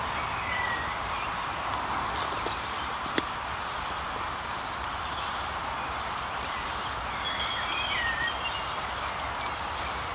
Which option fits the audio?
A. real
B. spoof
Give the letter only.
B